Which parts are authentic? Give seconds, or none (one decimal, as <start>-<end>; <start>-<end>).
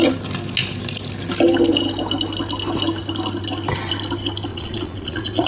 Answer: 0.0-4.5